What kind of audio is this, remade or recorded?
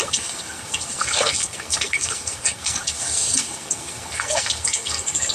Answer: remade